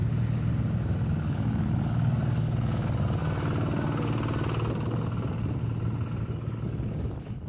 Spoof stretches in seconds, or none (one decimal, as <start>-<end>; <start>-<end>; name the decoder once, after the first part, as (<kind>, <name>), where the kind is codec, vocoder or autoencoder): 1.2-3.2 (codec, DAC); 6.2-7.5